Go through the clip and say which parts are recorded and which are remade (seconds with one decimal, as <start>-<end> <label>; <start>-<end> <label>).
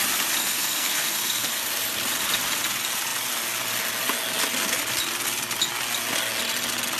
0.0-0.4 recorded; 0.4-1.5 remade; 1.5-7.0 recorded